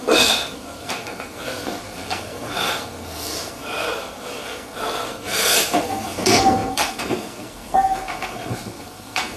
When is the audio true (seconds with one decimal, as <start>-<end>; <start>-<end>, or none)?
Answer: none